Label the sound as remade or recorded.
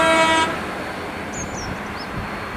recorded